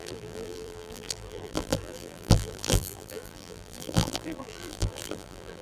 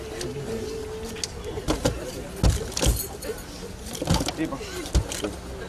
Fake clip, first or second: first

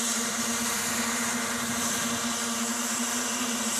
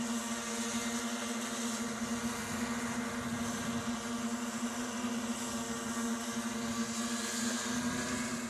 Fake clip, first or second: first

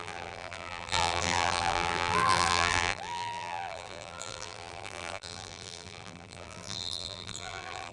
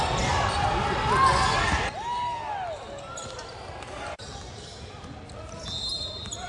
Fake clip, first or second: first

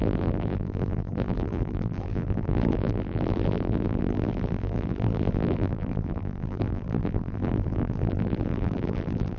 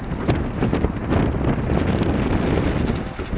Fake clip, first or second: first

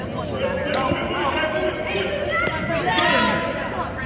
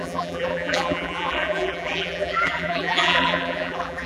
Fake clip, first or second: second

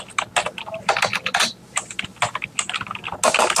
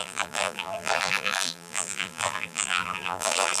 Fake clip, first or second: second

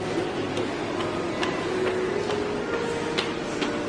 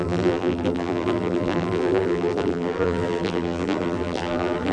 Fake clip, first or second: second